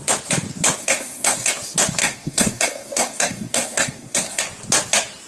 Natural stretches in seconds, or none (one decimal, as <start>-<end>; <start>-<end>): 0.0-0.8; 1.5-2.0; 4.4-5.3